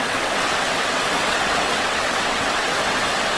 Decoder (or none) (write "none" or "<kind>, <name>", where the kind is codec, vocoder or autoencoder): vocoder, WaveNeXt